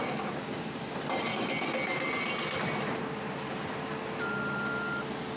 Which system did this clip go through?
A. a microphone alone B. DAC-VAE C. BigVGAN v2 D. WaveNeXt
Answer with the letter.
A